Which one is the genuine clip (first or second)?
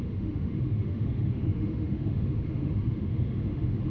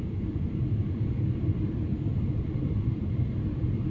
second